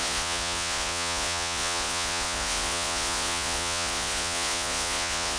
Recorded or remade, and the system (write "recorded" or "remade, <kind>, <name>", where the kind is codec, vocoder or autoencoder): remade, vocoder, Vocos